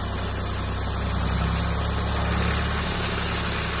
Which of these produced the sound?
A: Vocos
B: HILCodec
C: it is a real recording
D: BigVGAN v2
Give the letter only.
C